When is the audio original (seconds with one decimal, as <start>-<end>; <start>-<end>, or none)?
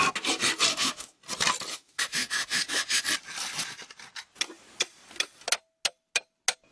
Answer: 0.0-0.7; 1.2-1.7; 3.0-6.7